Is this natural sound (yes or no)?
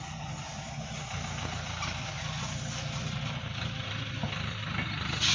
yes